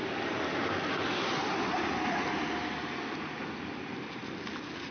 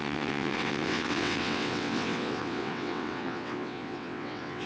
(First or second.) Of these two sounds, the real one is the first